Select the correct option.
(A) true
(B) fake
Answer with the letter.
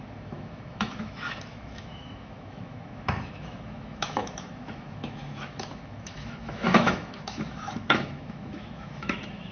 B